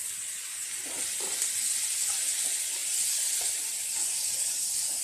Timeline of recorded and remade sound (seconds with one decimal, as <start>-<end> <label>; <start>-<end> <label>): 0.0-5.0 recorded